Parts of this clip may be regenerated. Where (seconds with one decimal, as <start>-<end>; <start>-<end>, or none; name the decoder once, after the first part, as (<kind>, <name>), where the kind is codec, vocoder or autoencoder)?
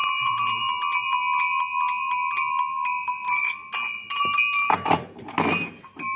0.0-0.6 (vocoder, Vocos)